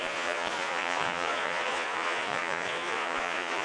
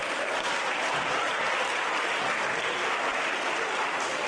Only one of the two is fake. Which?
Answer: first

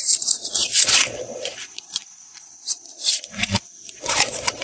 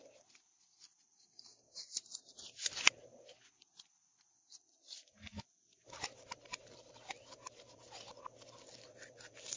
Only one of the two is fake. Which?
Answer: first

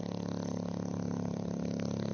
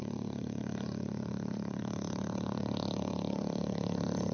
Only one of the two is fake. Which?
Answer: second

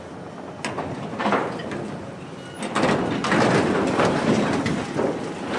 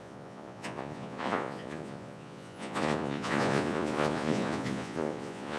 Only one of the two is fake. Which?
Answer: second